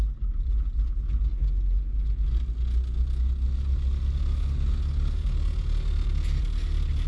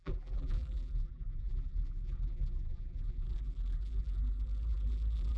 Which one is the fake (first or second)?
second